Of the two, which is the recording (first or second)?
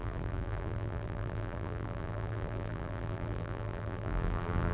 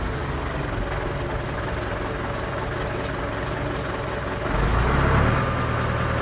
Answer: second